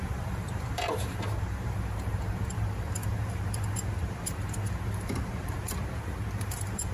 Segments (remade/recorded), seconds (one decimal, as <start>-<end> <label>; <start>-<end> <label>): 0.0-6.9 remade